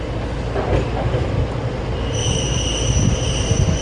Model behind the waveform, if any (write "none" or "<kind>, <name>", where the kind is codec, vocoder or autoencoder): none